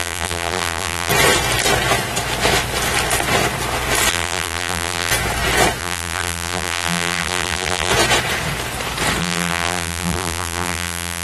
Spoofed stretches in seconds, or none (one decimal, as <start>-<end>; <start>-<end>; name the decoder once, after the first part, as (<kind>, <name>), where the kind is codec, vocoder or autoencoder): 0.0-1.1 (vocoder, BigVGAN v2); 4.1-5.1; 5.8-7.9; 9.2-11.2